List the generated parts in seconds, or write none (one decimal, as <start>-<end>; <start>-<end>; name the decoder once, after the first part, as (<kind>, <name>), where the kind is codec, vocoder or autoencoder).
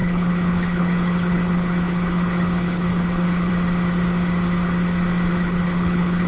0.0-3.5 (codec, HILCodec); 5.3-6.3